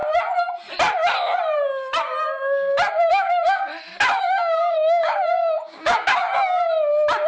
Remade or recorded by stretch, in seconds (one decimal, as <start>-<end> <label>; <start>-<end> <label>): 0.0-2.9 recorded; 2.9-3.7 remade; 3.7-4.2 recorded; 4.2-6.2 remade; 6.2-7.3 recorded